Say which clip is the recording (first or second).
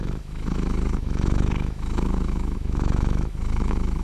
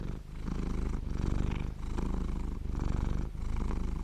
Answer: second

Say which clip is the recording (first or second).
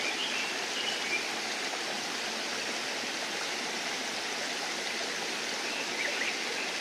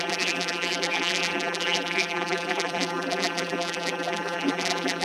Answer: first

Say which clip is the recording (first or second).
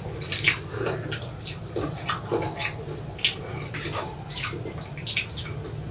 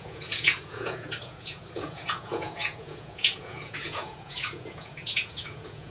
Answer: first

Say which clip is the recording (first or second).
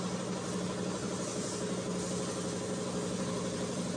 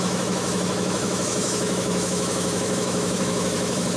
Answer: first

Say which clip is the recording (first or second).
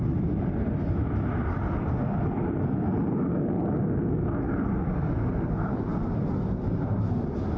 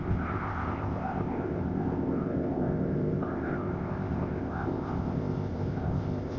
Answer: first